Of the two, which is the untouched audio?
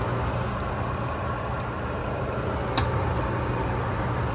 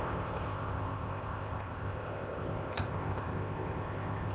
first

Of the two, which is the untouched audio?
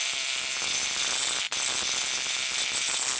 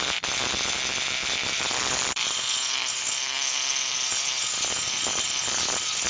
first